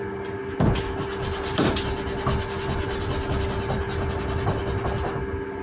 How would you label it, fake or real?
real